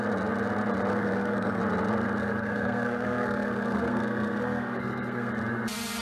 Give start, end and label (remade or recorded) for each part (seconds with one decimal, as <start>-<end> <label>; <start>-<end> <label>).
0.0-0.9 recorded; 0.9-1.6 remade; 1.6-2.2 recorded; 2.2-5.3 remade; 5.3-6.0 recorded